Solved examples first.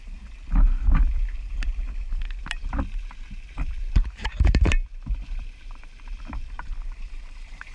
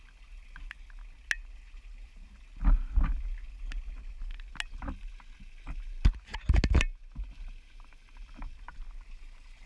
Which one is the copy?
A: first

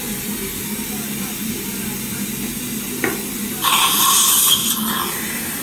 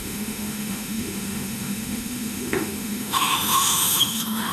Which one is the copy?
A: second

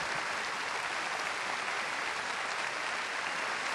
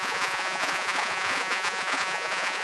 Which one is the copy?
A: second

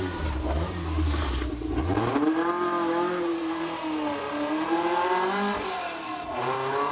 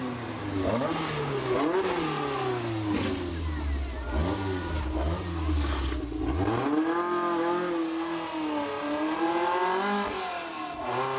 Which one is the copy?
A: first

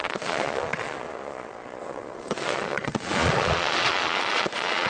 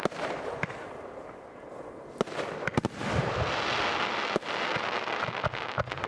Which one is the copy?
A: first